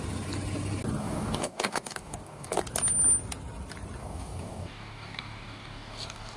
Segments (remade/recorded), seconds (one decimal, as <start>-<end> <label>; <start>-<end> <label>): 0.0-1.0 recorded; 1.0-2.6 remade; 2.6-4.0 recorded; 4.0-6.4 remade